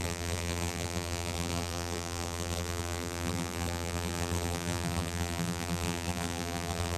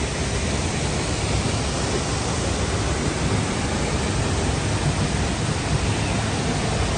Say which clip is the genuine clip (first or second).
second